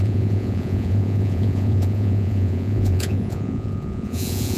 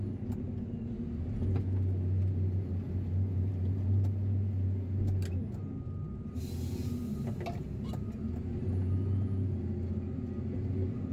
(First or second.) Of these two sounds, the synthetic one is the first